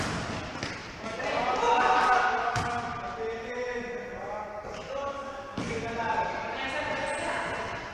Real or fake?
real